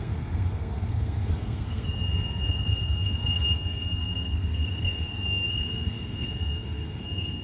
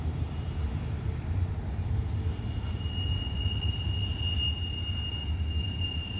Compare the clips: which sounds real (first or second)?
second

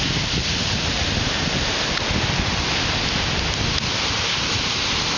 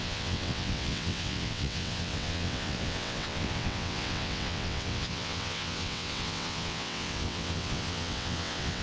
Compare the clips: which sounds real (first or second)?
first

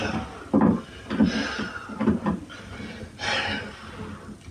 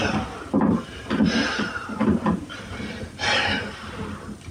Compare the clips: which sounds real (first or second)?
first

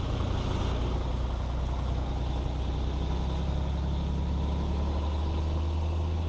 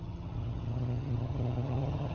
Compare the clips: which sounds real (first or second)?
first